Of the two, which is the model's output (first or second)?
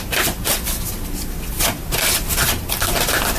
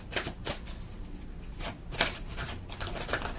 first